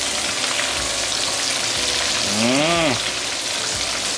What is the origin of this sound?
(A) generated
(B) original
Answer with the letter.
B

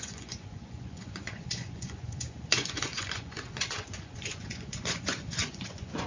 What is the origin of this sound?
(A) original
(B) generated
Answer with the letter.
B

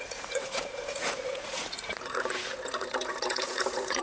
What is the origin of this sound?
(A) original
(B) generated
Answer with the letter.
B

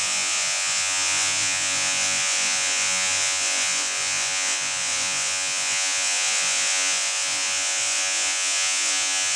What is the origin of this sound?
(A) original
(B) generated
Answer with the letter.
B